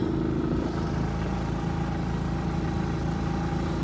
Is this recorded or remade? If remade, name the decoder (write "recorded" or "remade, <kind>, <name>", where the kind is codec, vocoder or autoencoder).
recorded